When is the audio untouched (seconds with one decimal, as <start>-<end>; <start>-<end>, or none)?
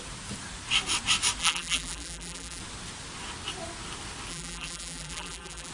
0.0-1.4; 2.6-4.3